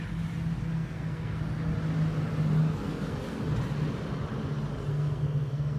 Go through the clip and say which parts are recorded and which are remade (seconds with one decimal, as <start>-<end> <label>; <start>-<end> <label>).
0.0-0.7 recorded; 0.7-1.4 remade; 1.4-2.6 recorded; 2.6-3.4 remade; 3.4-4.9 recorded; 4.9-5.8 remade